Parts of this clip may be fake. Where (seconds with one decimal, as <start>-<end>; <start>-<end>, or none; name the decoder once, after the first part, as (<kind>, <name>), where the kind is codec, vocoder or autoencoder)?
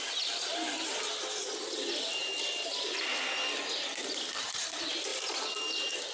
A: none